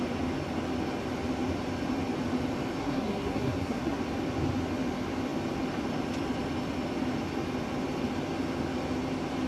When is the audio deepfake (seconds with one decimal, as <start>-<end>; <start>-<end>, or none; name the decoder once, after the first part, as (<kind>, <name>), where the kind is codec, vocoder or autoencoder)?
2.8-4.0 (codec, SNAC)